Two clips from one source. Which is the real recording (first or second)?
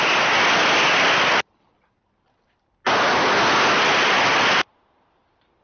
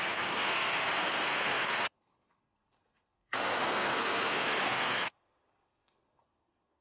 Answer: first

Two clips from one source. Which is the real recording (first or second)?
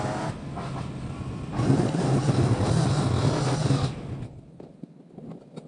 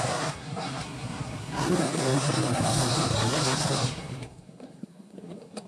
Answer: first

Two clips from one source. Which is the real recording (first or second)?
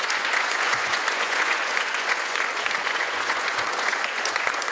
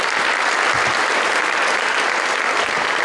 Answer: second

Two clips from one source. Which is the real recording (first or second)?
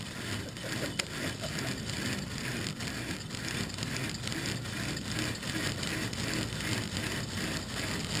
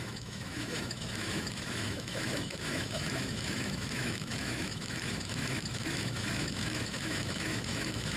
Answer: first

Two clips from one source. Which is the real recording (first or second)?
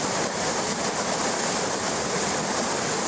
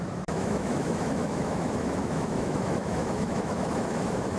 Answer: first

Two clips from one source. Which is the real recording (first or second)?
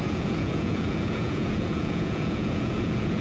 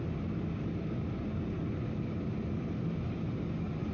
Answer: second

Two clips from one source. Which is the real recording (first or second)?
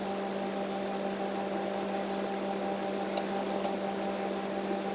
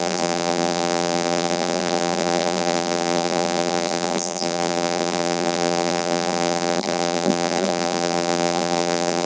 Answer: first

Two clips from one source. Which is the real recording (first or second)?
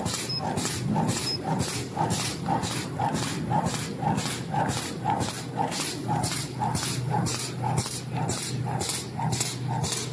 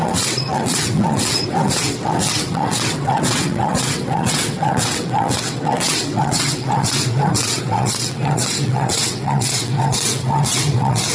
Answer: first